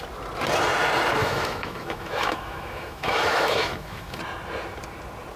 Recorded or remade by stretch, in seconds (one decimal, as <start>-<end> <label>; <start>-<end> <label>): 0.0-1.2 recorded; 1.2-4.2 remade; 4.2-5.4 recorded